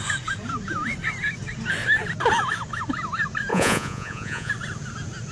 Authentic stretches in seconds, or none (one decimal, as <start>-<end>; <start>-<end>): 0.0-3.5; 4.5-5.3